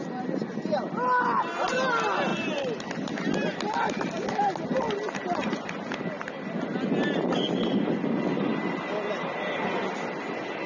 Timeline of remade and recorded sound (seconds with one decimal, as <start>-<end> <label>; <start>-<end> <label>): 0.0-10.7 recorded